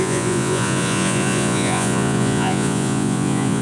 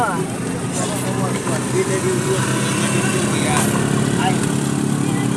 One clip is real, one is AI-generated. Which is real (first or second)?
second